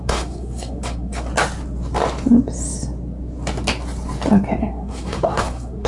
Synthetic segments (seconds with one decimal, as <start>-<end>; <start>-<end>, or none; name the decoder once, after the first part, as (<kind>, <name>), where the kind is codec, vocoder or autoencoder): 0.0-1.3 (codec, SNAC); 4.6-5.9